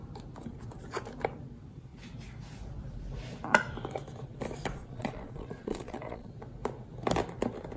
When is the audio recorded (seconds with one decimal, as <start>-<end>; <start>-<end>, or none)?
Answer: 0.0-4.8; 6.3-7.8